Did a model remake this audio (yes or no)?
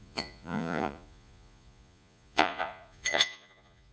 yes